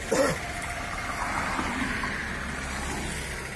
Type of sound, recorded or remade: recorded